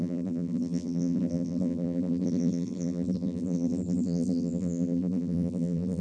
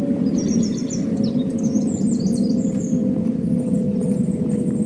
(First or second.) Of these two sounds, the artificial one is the first